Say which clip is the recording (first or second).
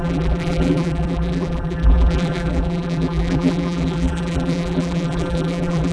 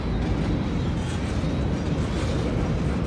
second